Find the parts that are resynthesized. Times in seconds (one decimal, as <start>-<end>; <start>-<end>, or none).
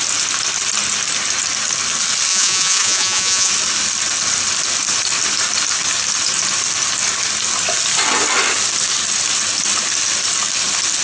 2.3-3.5